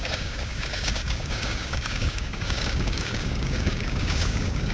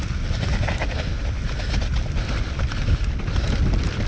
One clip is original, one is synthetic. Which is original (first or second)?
second